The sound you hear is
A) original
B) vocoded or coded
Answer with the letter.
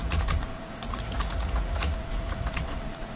B